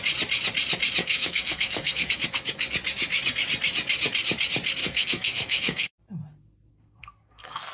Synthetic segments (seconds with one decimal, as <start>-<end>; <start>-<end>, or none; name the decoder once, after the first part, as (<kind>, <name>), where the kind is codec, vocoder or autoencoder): 1.0-2.1 (codec, SNAC); 4.8-5.9; 6.7-7.7

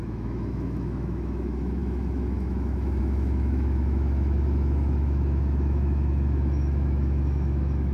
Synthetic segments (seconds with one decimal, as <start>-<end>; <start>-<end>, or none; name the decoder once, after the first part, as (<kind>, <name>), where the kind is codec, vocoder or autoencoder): 0.0-7.9 (autoencoder, DAC-VAE)

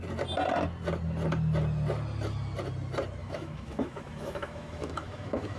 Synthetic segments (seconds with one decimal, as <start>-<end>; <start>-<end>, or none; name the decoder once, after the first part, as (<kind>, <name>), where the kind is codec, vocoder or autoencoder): 3.2-5.6 (autoencoder, DAC-VAE)

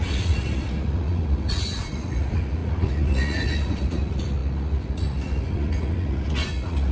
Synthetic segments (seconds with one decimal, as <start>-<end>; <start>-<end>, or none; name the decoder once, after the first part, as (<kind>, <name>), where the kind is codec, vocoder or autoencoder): 0.0-6.9 (vocoder, Vocos)

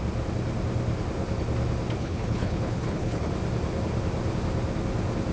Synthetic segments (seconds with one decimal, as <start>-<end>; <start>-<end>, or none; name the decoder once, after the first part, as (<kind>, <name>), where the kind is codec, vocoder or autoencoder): 2.0-3.3 (codec, HILCodec)

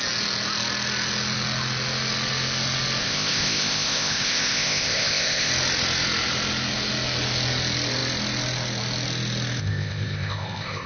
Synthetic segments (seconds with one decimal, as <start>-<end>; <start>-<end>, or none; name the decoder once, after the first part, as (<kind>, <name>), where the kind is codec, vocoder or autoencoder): 3.0-5.5 (codec, ZipCodec); 9.6-10.9

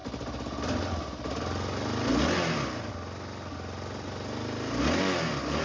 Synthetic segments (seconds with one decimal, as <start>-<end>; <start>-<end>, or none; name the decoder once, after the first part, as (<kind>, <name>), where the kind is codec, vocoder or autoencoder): none